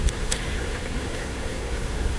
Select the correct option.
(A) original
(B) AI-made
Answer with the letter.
B